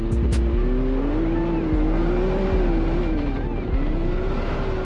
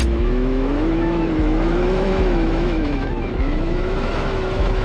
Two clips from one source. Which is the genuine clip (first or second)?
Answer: first